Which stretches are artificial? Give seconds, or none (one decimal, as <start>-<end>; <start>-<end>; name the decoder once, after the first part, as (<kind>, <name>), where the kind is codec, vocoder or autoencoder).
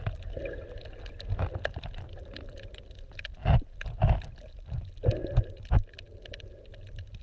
none